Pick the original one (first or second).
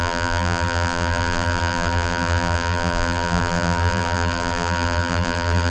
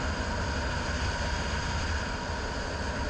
second